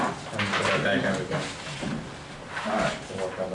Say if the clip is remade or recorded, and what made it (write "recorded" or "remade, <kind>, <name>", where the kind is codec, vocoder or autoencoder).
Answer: recorded